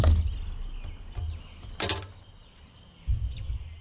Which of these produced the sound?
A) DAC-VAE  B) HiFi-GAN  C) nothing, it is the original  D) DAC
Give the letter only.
C